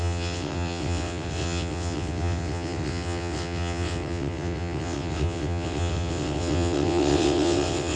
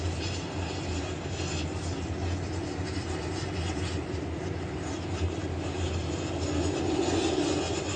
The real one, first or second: second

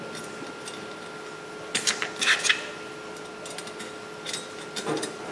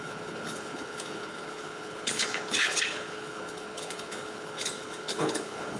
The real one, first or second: first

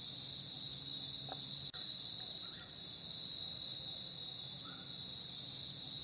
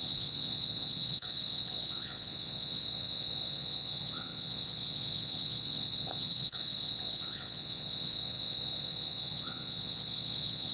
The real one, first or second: first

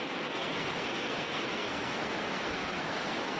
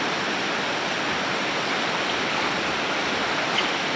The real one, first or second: second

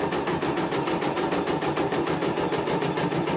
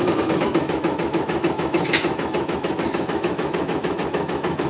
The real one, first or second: first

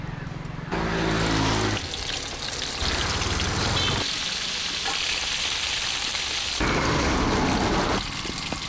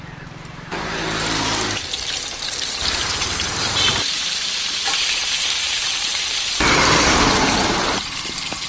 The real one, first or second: first